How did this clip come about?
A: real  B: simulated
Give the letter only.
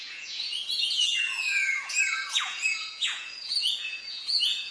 B